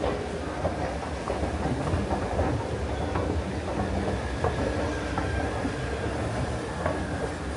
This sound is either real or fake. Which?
real